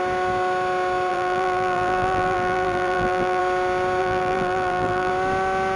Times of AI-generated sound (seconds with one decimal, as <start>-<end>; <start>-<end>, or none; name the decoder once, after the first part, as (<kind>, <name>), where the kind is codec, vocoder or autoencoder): 1.1-3.4 (vocoder, BigVGAN v2); 4.0-5.1